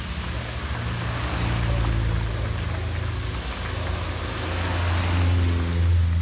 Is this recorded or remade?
recorded